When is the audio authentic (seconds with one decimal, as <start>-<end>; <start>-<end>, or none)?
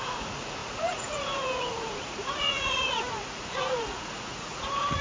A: none